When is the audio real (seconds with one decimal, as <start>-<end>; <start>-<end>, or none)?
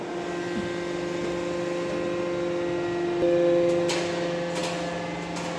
0.0-5.6